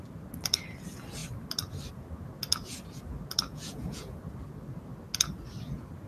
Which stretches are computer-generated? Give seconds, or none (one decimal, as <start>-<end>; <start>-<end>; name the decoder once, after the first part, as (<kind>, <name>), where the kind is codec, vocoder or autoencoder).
3.5-4.2 (vocoder, Vocos)